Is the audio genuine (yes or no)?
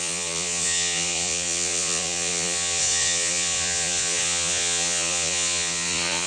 no